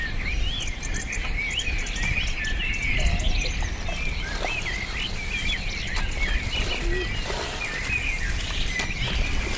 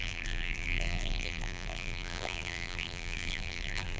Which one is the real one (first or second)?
first